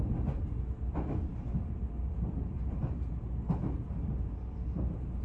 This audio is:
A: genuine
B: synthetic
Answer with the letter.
A